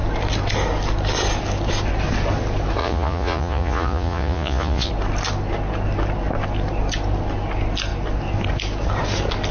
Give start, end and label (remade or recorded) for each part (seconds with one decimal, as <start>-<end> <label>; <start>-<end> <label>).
0.0-2.8 recorded; 2.8-4.9 remade; 4.9-9.5 recorded